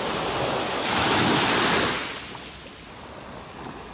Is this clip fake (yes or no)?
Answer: no